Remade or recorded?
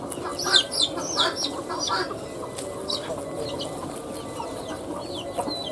recorded